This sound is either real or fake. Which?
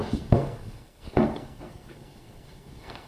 fake